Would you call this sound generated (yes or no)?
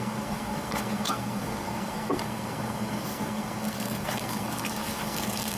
yes